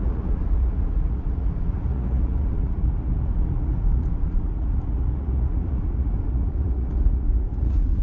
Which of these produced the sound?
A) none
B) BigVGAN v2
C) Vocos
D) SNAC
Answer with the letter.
C